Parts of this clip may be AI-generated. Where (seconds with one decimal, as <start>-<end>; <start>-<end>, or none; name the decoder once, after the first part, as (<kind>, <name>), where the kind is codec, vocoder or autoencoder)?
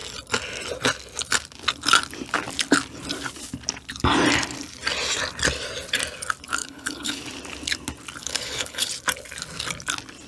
6.6-7.2 (codec, HILCodec); 8.2-8.9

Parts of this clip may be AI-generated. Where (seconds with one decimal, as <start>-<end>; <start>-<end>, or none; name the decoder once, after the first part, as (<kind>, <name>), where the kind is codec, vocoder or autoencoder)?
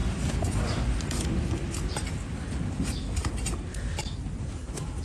0.0-5.0 (vocoder, BigVGAN v2)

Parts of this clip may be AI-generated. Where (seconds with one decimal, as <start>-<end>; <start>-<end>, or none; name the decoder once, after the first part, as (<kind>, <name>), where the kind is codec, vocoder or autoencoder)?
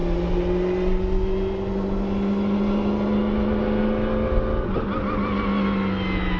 none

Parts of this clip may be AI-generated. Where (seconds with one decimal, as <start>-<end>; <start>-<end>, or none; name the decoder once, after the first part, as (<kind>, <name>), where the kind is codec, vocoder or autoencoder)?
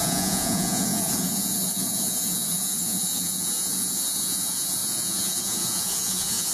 0.0-6.5 (vocoder, Vocos)